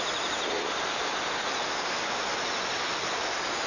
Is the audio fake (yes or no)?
no